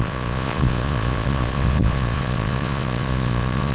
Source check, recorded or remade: remade